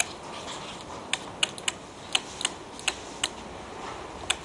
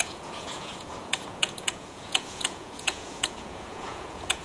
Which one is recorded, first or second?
first